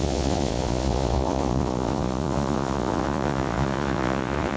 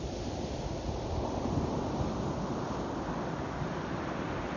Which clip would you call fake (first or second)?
first